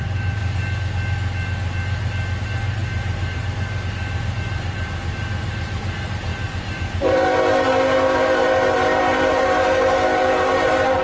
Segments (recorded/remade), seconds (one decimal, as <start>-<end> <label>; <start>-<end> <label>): 0.0-0.4 remade; 0.4-2.4 recorded; 2.4-11.0 remade